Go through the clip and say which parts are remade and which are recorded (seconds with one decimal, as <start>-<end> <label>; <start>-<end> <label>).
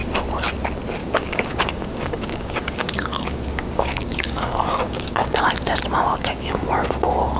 0.0-1.0 recorded; 1.0-5.4 remade; 5.4-6.1 recorded; 6.1-6.7 remade; 6.7-7.4 recorded